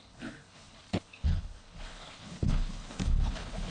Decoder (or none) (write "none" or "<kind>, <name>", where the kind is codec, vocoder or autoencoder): codec, HILCodec